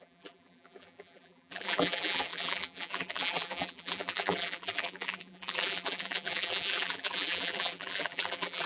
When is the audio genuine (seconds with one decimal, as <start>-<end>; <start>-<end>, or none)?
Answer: none